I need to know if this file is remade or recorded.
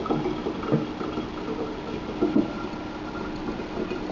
recorded